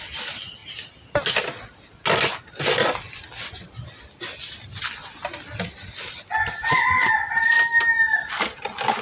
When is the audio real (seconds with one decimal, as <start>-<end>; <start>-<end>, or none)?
0.0-9.0